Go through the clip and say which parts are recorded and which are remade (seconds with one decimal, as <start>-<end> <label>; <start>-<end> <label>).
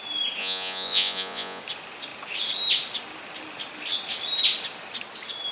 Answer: 0.0-0.4 recorded; 0.4-1.6 remade; 1.6-5.5 recorded